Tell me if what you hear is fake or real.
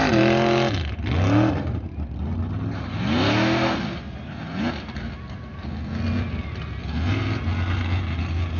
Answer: real